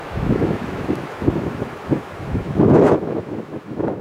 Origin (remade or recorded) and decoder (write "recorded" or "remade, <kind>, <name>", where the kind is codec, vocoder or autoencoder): remade, autoencoder, DAC-VAE